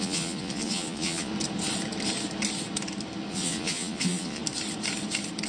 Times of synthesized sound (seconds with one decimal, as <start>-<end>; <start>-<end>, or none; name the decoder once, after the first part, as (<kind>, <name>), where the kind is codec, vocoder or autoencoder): 0.0-1.3 (vocoder, Vocos); 3.3-4.4